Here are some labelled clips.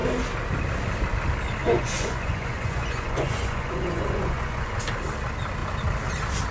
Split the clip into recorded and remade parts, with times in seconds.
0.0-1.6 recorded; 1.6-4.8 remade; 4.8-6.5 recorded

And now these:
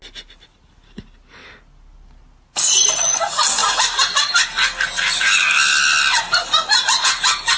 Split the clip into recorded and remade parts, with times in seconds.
0.0-7.6 recorded

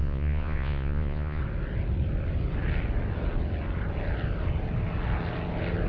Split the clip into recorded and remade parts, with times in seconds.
0.0-1.4 remade; 1.4-5.9 recorded

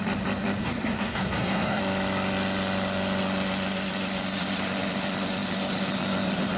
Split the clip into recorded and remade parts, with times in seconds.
0.0-0.6 recorded; 0.6-1.8 remade; 1.8-6.6 recorded